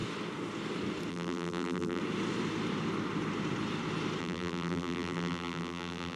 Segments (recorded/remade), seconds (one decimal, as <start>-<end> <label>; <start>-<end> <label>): 0.0-1.1 recorded; 1.1-2.0 remade; 2.0-4.2 recorded; 4.2-6.2 remade